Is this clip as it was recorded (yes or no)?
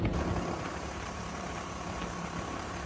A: no